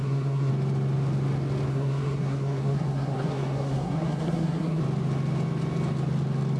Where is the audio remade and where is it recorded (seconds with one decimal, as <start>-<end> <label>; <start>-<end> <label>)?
0.0-0.5 remade; 0.5-1.7 recorded; 1.7-4.8 remade; 4.8-6.6 recorded